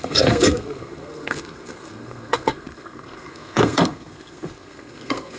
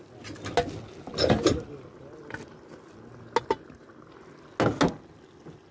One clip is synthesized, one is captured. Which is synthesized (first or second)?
first